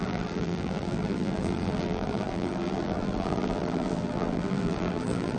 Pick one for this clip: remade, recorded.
remade